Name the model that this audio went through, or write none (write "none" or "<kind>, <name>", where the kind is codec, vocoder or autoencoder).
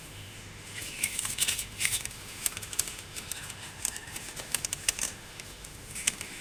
autoencoder, DAC-VAE